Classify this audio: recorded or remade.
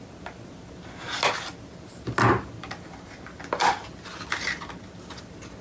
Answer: recorded